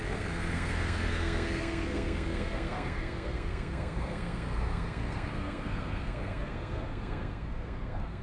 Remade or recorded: remade